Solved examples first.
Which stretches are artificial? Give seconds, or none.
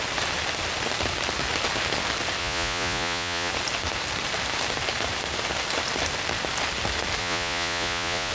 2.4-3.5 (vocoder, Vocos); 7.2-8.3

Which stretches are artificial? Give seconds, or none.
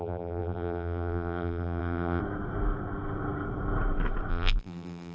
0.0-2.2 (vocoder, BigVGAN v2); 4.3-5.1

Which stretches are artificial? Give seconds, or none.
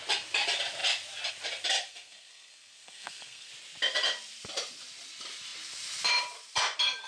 1.9-3.5 (codec, SNAC)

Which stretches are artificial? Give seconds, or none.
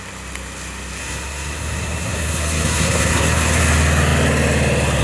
1.0-3.6 (codec, SNAC)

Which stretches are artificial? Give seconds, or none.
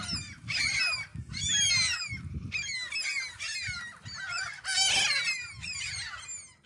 none